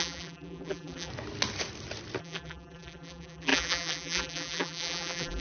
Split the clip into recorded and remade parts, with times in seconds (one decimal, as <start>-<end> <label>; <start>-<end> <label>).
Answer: 0.0-1.1 remade; 1.1-2.2 recorded; 2.2-5.4 remade